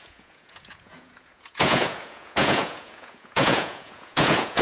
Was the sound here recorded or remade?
remade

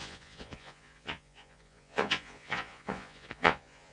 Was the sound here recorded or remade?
remade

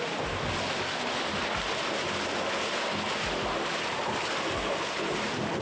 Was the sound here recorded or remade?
recorded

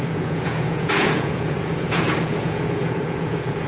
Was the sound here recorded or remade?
remade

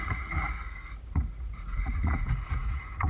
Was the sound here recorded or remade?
remade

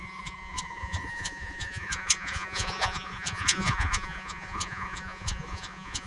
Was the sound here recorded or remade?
remade